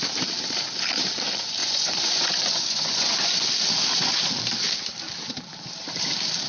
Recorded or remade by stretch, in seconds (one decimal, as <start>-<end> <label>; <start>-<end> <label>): 0.0-1.6 recorded; 1.6-3.5 remade; 3.5-6.5 recorded